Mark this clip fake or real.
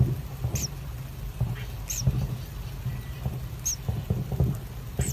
real